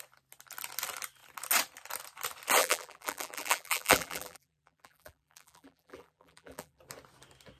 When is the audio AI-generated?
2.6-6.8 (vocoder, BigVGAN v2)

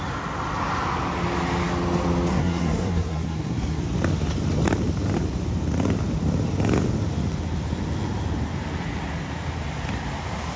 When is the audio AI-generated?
2.3-3.8 (codec, SNAC)